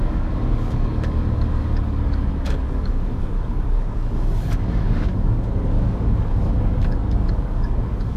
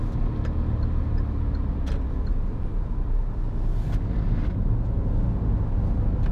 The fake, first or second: first